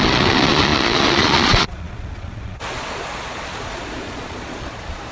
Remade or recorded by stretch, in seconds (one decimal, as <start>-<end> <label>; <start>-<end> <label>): 0.0-5.1 remade